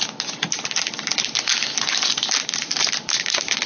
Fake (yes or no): no